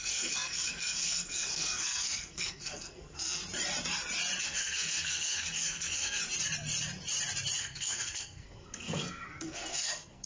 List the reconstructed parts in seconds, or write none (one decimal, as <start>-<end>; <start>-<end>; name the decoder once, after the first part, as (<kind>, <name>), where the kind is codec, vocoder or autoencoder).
0.0-3.4 (codec, SNAC); 4.4-6.2; 7.6-10.3